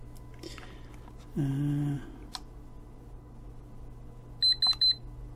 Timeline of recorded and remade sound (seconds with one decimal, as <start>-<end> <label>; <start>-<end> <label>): 0.0-5.4 recorded

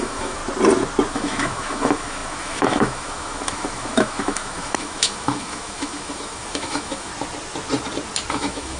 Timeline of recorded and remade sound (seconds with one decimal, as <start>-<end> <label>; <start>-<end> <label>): 0.0-0.4 remade; 0.4-1.1 recorded; 1.1-7.1 remade; 7.1-8.3 recorded; 8.3-8.8 remade

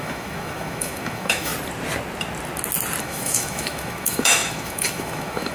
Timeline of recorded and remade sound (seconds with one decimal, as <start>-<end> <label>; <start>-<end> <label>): 0.0-1.5 remade; 1.5-3.0 recorded; 3.0-5.5 remade

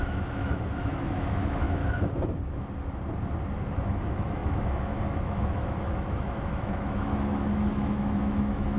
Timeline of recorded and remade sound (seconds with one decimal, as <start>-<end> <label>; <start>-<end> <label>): 0.0-1.8 remade; 1.8-3.8 recorded; 3.8-8.8 remade

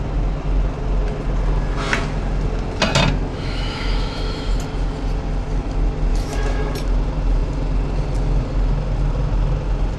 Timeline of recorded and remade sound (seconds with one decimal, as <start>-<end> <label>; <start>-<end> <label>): 0.0-3.3 recorded; 3.3-4.5 remade; 4.5-6.1 recorded; 6.1-6.6 remade; 6.6-10.0 recorded